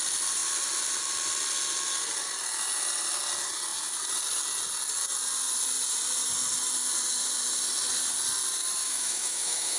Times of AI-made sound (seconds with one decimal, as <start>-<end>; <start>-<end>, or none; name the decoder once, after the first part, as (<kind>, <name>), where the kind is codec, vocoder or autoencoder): 8.8-9.8 (autoencoder, DAC-VAE)